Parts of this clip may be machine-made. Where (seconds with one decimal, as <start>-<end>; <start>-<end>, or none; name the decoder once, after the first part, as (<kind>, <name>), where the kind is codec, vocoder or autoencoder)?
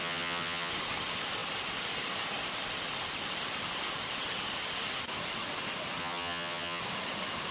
0.0-0.7 (vocoder, HiFi-GAN); 6.0-6.8